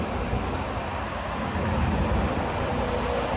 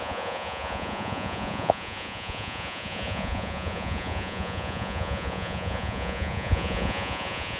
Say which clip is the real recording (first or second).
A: first